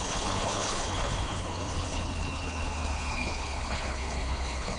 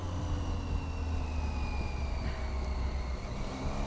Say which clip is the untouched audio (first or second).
second